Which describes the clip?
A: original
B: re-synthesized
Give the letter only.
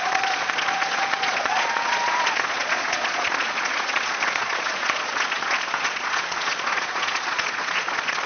B